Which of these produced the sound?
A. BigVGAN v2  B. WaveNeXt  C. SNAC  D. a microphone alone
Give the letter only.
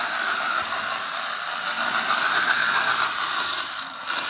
D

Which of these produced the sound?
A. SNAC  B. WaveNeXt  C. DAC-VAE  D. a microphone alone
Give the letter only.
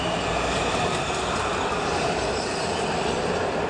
D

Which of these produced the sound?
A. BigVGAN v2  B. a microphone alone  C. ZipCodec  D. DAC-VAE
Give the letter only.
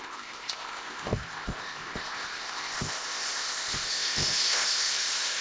C